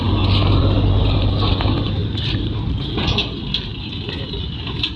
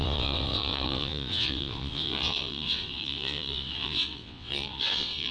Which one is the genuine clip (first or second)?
first